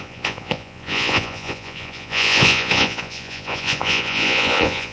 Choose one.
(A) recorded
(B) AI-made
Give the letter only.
B